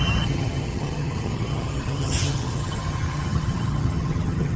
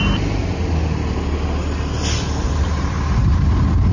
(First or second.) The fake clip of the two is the first